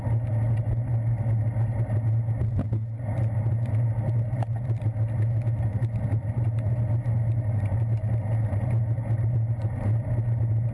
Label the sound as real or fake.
real